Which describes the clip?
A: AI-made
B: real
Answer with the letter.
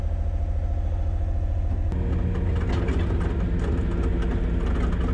B